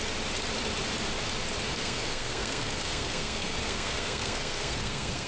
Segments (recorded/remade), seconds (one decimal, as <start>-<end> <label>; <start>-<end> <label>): 0.0-1.8 recorded; 1.8-5.3 remade